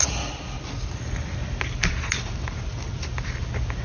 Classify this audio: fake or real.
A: real